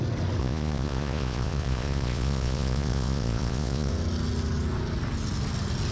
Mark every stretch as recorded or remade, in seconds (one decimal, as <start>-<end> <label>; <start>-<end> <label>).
0.0-0.4 recorded; 0.4-3.9 remade; 3.9-5.9 recorded